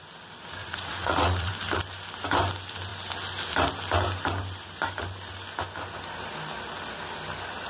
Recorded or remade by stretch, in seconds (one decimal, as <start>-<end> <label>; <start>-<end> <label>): 0.0-0.6 recorded; 0.6-1.5 remade; 1.5-7.7 recorded

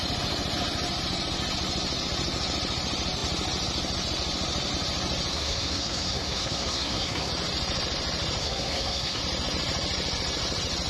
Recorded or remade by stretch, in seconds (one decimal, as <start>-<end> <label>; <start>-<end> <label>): 0.0-5.3 recorded; 5.3-7.3 remade; 7.3-8.4 recorded; 8.4-9.2 remade; 9.2-10.9 recorded

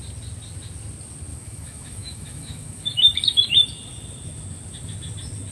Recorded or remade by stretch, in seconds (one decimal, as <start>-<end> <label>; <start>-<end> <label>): 0.0-1.3 recorded; 1.3-3.7 remade; 3.7-5.5 recorded

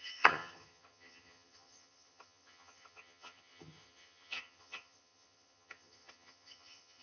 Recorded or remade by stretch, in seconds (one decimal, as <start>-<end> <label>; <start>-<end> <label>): 0.0-7.0 remade

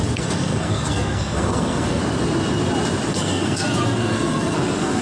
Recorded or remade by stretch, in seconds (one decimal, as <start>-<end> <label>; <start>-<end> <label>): 0.0-2.0 remade; 2.0-3.1 recorded; 3.1-5.0 remade